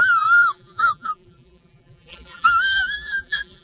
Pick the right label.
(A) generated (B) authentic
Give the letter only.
A